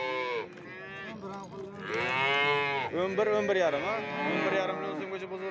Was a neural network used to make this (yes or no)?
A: no